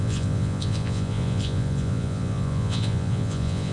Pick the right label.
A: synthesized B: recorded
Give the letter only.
A